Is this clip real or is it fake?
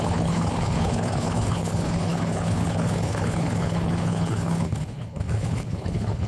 fake